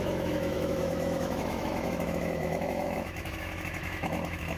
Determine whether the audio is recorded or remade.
remade